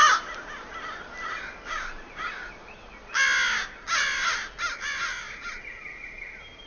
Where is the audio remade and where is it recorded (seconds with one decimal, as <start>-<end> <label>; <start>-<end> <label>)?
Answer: 0.0-6.7 recorded